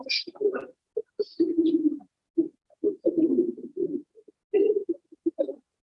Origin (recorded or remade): recorded